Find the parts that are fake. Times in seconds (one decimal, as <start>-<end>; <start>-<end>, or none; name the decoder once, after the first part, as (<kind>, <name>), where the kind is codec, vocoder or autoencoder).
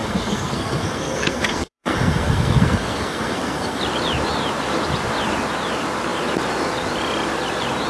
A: 0.0-3.8 (codec, SNAC)